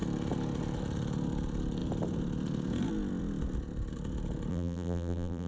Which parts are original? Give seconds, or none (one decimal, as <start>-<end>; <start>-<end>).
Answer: 0.0-4.5